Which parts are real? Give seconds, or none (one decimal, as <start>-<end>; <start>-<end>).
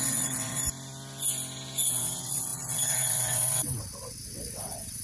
0.6-1.9